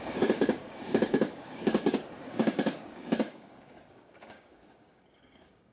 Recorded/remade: remade